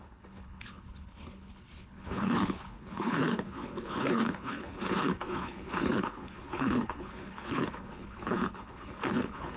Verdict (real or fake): fake